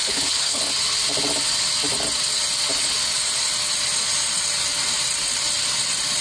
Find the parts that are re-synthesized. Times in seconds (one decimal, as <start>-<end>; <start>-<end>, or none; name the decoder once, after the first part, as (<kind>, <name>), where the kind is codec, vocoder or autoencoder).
0.0-0.6 (codec, HILCodec)